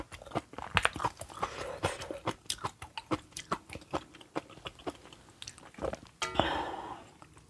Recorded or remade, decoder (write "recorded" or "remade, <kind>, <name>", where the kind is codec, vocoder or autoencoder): recorded